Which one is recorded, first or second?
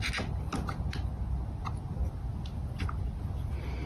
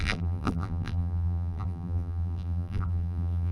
first